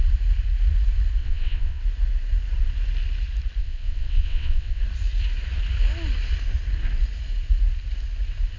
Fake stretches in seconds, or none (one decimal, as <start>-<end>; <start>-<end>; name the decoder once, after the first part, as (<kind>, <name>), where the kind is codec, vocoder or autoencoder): 1.2-1.8 (vocoder, WaveNeXt); 3.6-4.8